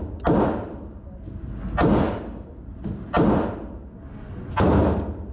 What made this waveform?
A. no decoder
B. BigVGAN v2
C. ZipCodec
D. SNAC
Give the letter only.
A